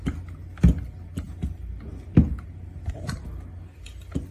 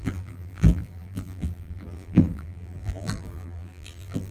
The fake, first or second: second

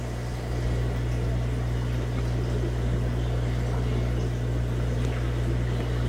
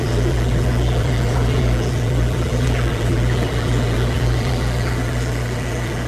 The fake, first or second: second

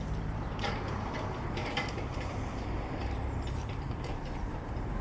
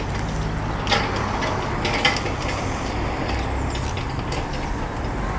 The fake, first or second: first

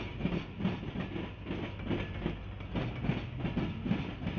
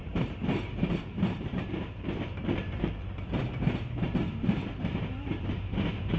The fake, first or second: second